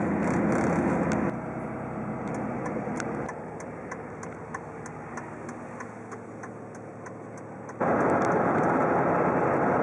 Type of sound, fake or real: real